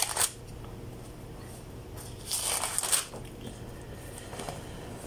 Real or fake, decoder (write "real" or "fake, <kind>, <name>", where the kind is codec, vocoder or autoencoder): real